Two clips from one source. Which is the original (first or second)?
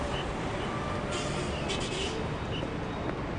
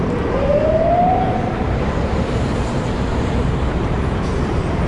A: first